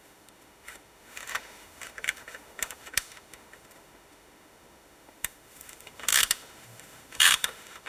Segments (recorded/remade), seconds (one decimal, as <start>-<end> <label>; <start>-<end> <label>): 0.0-7.9 remade